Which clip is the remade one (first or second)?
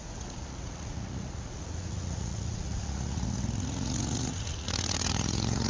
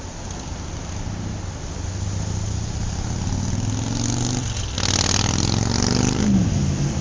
first